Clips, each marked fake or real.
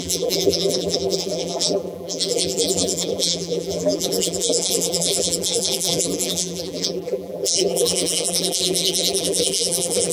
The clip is fake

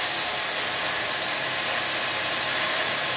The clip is real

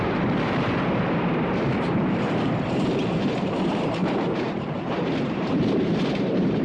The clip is fake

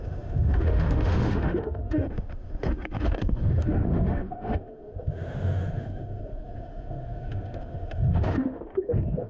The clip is fake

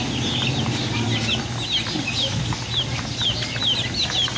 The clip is real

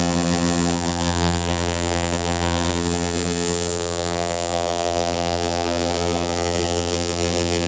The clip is fake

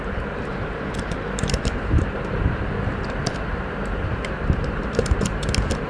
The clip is fake